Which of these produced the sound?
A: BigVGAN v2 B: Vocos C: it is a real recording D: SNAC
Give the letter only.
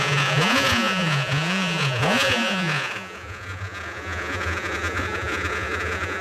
B